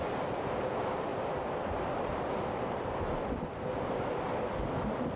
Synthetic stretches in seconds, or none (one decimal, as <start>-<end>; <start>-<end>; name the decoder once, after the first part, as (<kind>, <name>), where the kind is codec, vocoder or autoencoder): 1.1-4.2 (vocoder, BigVGAN v2)